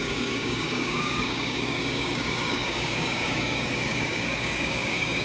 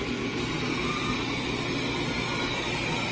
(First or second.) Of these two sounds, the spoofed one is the first